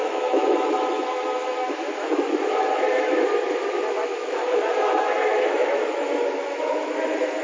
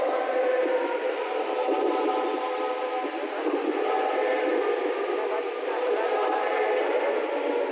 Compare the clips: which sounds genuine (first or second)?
second